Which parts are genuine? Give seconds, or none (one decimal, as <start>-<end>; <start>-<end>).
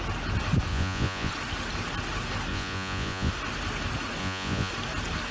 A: 0.0-0.7; 1.3-2.5; 3.3-4.2; 4.7-5.3